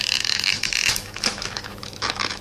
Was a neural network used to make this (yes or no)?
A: yes